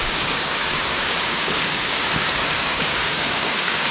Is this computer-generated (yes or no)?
yes